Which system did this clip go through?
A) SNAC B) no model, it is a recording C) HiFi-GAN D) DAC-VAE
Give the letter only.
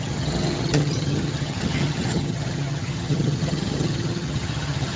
C